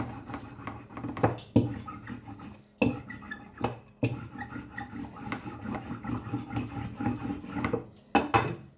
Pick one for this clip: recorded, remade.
recorded